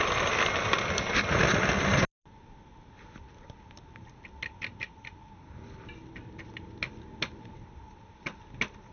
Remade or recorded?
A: recorded